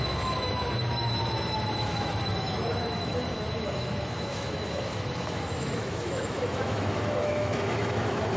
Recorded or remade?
remade